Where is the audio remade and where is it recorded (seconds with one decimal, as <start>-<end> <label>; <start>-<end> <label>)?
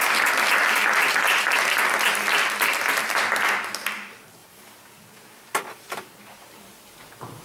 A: 0.0-4.4 recorded; 4.4-6.6 remade; 6.6-7.4 recorded